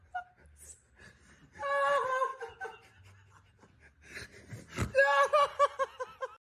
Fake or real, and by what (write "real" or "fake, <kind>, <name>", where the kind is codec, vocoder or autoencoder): real